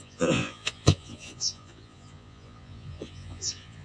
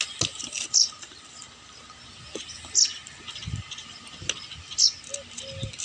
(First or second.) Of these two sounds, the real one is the second